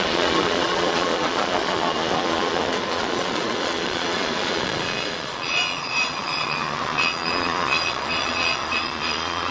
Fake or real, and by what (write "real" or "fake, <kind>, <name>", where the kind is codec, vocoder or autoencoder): fake, vocoder, Vocos